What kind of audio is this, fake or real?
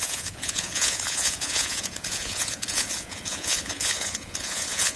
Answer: fake